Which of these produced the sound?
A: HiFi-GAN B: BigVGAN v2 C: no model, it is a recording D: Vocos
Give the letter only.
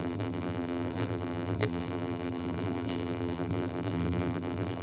B